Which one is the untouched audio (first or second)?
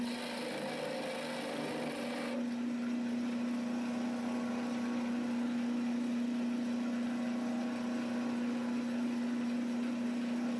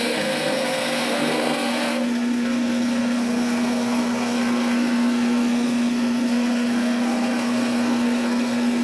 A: first